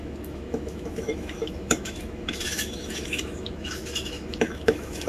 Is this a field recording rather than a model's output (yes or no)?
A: no